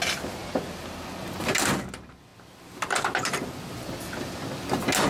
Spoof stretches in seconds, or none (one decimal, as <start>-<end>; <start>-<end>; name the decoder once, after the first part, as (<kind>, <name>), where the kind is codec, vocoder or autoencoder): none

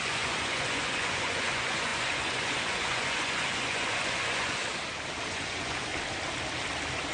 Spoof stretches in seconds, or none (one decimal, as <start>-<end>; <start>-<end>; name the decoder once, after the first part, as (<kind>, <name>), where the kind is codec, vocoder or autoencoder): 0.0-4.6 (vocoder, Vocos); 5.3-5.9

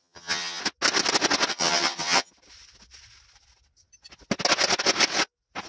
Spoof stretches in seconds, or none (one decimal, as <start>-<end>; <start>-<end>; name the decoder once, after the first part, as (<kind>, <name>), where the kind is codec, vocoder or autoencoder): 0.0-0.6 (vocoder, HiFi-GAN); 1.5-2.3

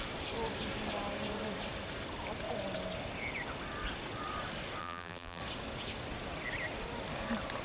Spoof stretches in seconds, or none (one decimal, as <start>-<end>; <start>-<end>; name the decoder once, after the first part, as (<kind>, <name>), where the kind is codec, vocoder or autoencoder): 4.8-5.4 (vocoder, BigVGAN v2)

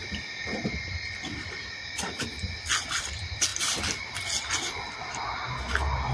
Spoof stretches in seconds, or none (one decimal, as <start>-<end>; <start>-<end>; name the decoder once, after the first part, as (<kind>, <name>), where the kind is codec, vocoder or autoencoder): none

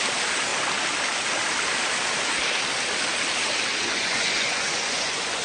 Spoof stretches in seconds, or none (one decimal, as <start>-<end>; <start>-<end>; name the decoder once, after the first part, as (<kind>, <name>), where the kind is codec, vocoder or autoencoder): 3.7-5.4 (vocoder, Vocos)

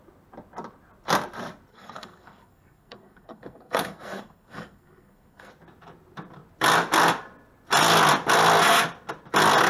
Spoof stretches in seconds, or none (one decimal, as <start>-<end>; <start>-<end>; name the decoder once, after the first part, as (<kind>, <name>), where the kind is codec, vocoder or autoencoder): 1.7-5.5 (codec, SNAC)

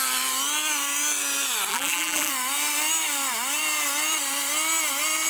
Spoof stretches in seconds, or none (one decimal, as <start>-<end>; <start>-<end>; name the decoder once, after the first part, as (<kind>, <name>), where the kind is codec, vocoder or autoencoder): 1.7-2.3 (vocoder, BigVGAN v2)